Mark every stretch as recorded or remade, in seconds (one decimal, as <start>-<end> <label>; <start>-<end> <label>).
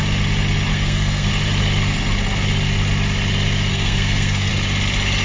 0.0-0.7 recorded; 0.7-1.3 remade; 1.3-3.7 recorded; 3.7-4.5 remade; 4.5-5.2 recorded